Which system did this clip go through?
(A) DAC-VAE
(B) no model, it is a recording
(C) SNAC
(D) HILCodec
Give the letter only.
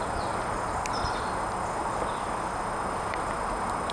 B